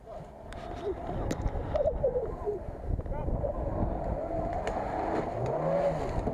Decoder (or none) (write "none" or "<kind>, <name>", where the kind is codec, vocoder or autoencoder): none